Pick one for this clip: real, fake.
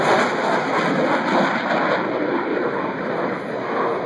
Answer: real